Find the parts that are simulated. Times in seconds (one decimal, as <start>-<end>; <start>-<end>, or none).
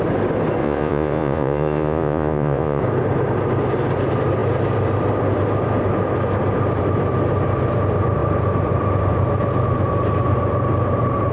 0.6-2.8